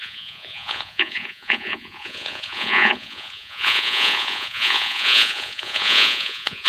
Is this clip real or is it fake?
fake